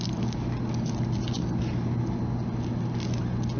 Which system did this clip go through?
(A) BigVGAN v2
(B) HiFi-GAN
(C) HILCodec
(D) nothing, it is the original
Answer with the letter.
D